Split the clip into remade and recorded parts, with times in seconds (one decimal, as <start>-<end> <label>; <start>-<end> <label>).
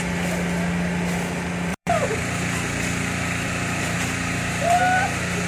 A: 0.0-1.7 recorded; 1.7-4.8 remade; 4.8-5.5 recorded